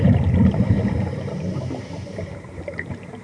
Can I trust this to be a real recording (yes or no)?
no